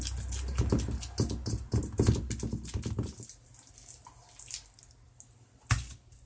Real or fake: real